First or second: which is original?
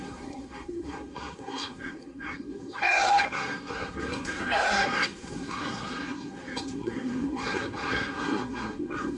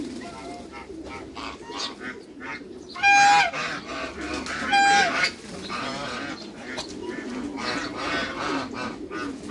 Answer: second